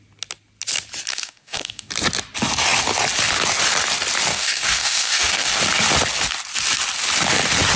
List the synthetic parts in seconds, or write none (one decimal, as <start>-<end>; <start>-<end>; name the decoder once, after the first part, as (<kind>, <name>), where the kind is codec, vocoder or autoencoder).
1.1-1.9 (codec, DAC); 4.3-5.6